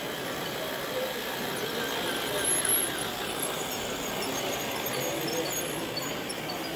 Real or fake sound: real